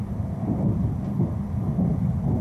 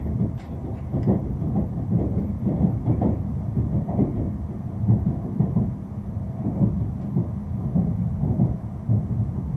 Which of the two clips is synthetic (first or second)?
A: first